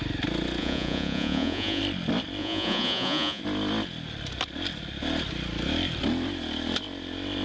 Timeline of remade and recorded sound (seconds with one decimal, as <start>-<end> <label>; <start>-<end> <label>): 0.0-0.6 recorded; 0.6-1.8 remade; 1.8-2.4 recorded; 2.4-3.4 remade; 3.4-7.4 recorded

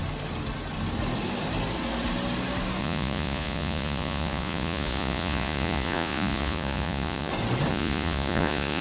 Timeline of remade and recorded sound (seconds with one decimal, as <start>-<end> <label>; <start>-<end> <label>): 0.0-2.8 recorded; 2.8-7.3 remade; 7.3-7.7 recorded; 7.7-8.8 remade

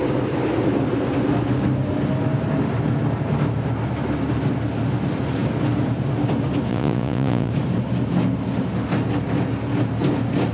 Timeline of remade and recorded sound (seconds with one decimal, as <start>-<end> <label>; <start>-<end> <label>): 0.0-6.7 recorded; 6.7-7.5 remade; 7.5-10.5 recorded

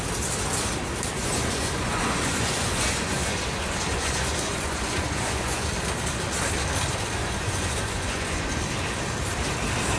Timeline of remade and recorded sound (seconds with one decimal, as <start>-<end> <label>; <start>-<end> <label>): 0.0-1.2 recorded; 1.2-5.7 remade; 5.7-7.2 recorded; 7.2-8.6 remade; 8.6-10.0 recorded

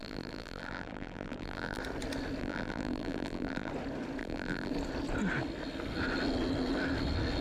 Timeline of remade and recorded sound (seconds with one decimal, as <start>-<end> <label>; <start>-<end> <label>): 0.0-1.8 remade; 1.8-2.4 recorded; 2.4-3.7 remade; 3.7-4.2 recorded; 4.2-4.7 remade; 4.7-7.4 recorded